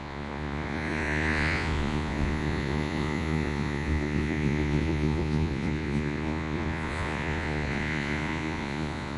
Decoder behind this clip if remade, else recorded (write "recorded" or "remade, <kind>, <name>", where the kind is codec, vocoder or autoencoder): remade, vocoder, Vocos